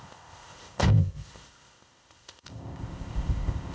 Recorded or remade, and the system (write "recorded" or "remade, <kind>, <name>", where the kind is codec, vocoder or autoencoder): remade, codec, ZipCodec